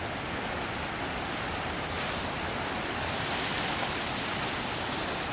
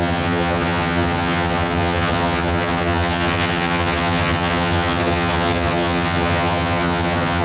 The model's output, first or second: second